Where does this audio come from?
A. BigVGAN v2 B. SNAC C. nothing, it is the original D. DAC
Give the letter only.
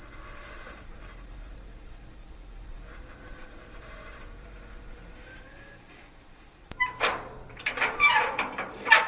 A